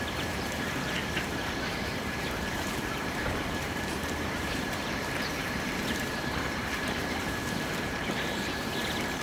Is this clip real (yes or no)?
no